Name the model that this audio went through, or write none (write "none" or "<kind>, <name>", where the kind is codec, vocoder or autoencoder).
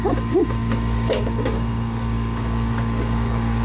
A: codec, DAC